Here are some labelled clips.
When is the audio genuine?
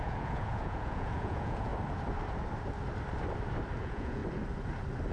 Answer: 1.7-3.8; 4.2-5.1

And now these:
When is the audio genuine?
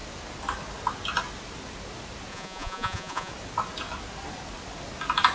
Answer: 0.0-2.3; 3.3-5.3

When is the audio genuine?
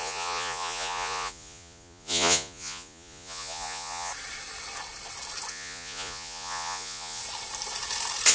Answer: 4.1-5.5; 7.2-8.3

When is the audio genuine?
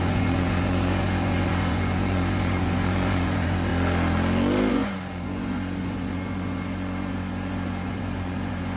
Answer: 3.7-4.7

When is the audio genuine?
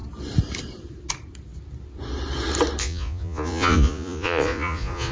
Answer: 0.0-2.8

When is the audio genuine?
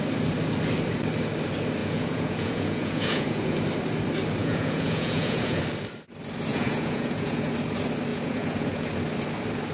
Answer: 0.0-1.8; 3.5-4.4; 5.6-6.5; 7.5-8.1; 8.9-9.7